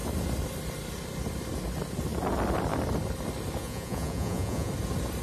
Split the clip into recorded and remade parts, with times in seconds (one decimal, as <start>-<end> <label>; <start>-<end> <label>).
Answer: 0.0-3.6 recorded; 3.6-4.7 remade; 4.7-5.2 recorded